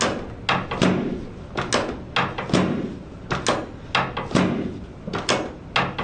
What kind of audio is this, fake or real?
real